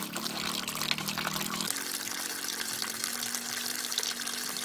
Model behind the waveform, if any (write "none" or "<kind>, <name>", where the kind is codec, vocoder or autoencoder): none